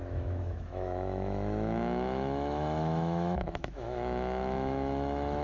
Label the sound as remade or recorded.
remade